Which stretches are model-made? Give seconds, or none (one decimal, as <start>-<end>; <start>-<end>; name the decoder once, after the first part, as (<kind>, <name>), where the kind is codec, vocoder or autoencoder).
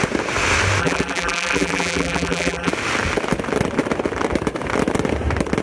0.8-2.7 (vocoder, BigVGAN v2)